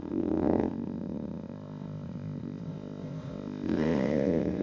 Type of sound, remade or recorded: remade